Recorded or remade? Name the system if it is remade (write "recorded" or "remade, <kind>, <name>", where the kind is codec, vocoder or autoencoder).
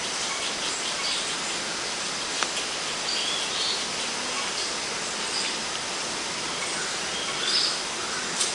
recorded